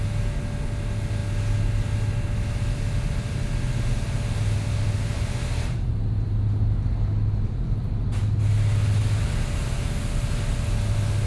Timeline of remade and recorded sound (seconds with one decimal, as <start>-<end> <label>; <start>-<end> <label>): 0.0-11.3 recorded

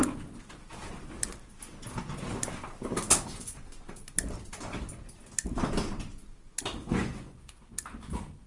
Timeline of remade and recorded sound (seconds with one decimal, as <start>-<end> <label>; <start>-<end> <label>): 0.0-6.8 recorded; 6.8-7.6 remade; 7.6-8.5 recorded

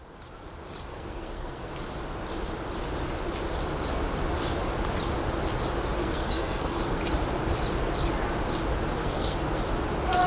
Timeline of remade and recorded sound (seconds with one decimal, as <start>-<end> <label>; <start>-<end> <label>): 0.0-0.9 recorded; 0.9-1.7 remade; 1.7-6.0 recorded; 6.0-7.0 remade; 7.0-9.0 recorded; 9.0-9.6 remade; 9.6-10.3 recorded

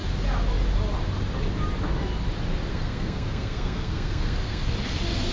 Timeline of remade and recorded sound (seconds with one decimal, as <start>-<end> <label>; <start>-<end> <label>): 0.0-2.7 recorded; 2.7-4.7 remade; 4.7-5.3 recorded

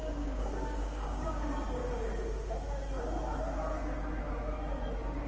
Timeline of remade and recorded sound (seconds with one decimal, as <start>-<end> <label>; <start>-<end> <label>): 0.0-1.8 remade; 1.8-5.3 recorded

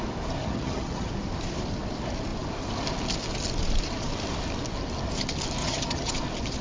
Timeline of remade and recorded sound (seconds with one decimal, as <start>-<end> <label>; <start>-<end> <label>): 0.0-0.4 recorded; 0.4-1.1 remade; 1.1-5.6 recorded; 5.6-6.1 remade; 6.1-6.6 recorded